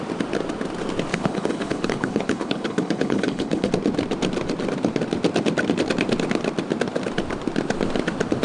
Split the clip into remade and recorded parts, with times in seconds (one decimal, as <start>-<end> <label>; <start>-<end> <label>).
0.0-1.1 recorded; 1.1-3.7 remade; 3.7-8.4 recorded